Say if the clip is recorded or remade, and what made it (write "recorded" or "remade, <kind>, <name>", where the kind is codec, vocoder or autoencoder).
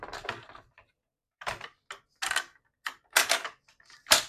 recorded